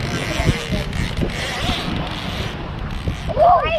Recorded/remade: recorded